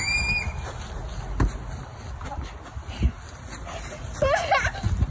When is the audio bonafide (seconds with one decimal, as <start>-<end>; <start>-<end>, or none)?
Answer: 0.0-5.1